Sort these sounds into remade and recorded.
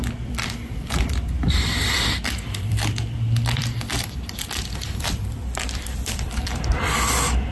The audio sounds remade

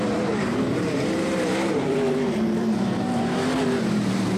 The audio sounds remade